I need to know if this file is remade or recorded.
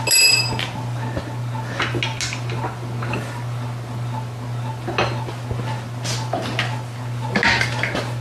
recorded